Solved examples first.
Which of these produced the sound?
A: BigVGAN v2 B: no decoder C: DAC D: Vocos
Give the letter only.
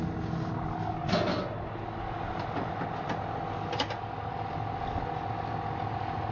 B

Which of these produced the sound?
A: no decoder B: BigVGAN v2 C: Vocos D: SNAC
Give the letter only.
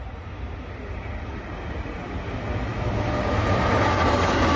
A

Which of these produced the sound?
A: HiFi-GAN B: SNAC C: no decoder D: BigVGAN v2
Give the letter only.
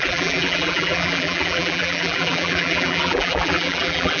D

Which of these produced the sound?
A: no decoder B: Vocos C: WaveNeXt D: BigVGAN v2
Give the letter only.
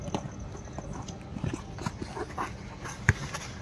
A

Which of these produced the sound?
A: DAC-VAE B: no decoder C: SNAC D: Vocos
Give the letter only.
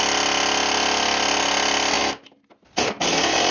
B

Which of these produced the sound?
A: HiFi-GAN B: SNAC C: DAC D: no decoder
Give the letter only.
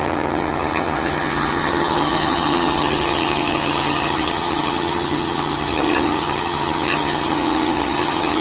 A